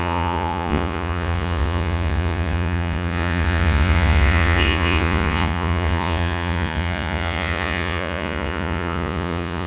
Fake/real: fake